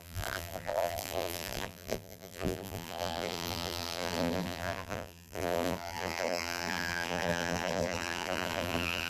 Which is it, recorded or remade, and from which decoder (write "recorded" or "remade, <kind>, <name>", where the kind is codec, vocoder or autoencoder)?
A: remade, vocoder, BigVGAN v2